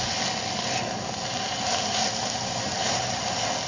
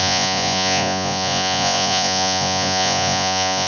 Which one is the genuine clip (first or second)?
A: first